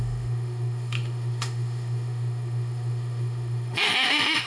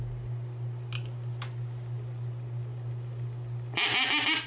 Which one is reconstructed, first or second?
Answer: first